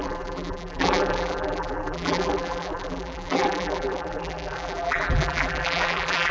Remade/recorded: remade